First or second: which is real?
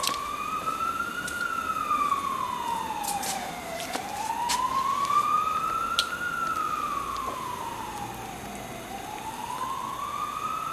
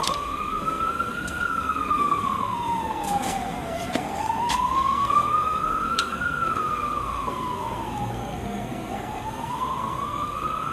first